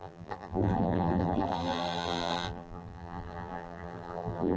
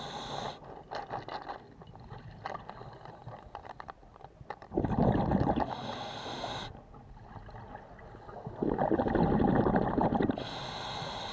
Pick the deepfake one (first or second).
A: first